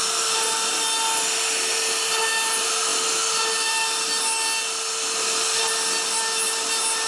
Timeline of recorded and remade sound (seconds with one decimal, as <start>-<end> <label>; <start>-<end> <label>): 0.0-7.1 recorded